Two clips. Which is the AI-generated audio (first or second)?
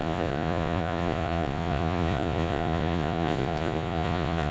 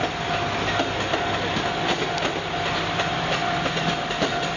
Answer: first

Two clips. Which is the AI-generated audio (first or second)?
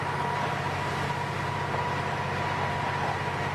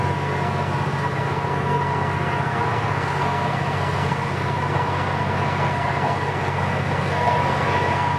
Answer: second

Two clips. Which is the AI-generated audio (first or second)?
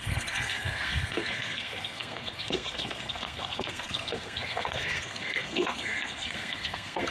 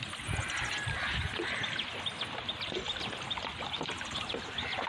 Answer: first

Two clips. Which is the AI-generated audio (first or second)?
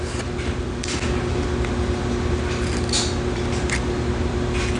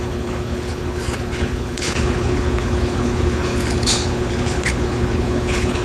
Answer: second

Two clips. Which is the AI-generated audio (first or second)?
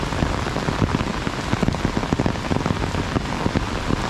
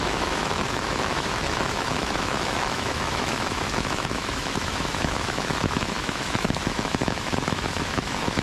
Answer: second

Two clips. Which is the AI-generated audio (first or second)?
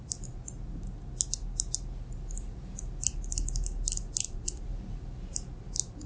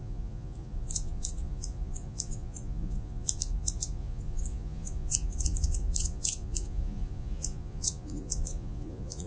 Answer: second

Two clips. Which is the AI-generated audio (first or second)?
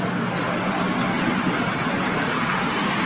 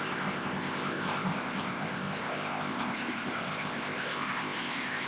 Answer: second